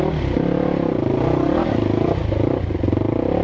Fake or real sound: real